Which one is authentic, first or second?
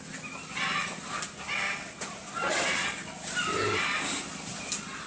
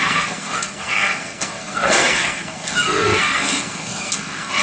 first